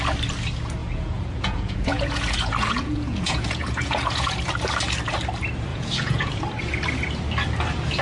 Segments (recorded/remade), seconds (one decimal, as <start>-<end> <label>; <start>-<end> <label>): 0.0-0.8 recorded; 0.8-4.5 remade; 4.5-5.7 recorded; 5.7-6.4 remade; 6.4-8.0 recorded